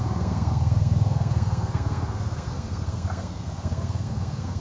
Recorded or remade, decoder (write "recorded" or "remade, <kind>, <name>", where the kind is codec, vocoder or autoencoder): remade, codec, SNAC